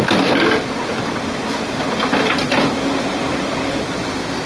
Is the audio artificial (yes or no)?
no